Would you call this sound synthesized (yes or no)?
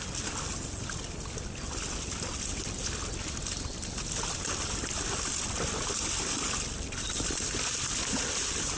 no